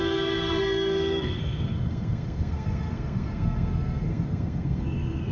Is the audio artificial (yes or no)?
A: yes